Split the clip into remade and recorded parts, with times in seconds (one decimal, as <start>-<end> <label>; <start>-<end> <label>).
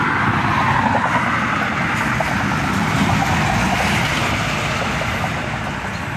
0.0-2.8 recorded; 2.8-5.4 remade; 5.4-6.2 recorded